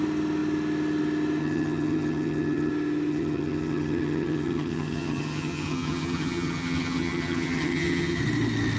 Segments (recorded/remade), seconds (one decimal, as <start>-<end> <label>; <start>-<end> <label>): 0.0-1.4 recorded; 1.4-2.7 remade; 2.7-3.1 recorded; 3.1-8.2 remade; 8.2-8.8 recorded